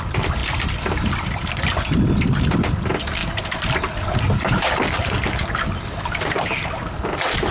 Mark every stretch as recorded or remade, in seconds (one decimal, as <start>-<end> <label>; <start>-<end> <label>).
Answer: 0.0-7.5 recorded

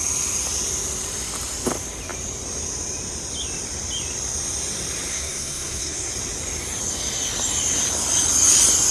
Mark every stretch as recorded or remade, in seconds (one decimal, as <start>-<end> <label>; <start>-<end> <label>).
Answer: 0.0-5.1 recorded; 5.1-6.1 remade; 6.1-8.9 recorded

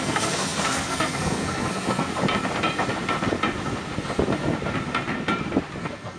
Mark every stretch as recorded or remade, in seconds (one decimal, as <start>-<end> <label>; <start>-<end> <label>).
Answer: 0.0-2.1 remade; 2.1-5.8 recorded; 5.8-6.2 remade